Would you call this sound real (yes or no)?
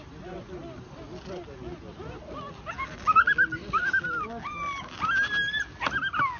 yes